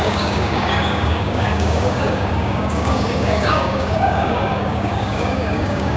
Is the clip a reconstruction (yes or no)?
yes